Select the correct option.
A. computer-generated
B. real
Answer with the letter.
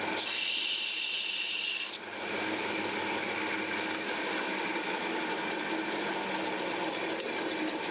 B